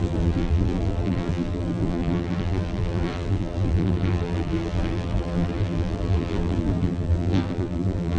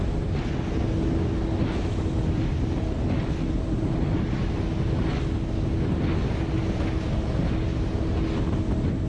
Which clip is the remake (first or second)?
first